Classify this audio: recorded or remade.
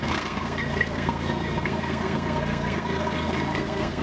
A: remade